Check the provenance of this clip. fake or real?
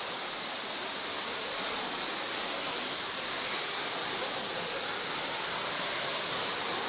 real